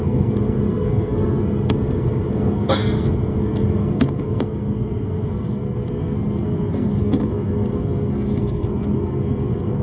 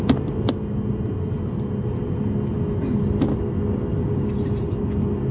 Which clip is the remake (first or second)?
first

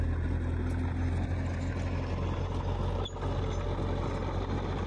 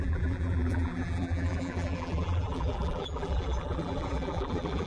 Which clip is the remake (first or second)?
second